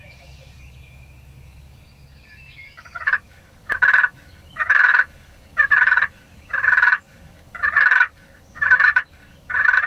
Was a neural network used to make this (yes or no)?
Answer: yes